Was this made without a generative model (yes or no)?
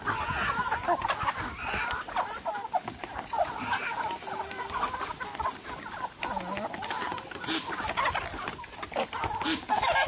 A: yes